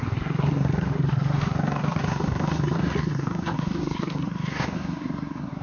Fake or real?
fake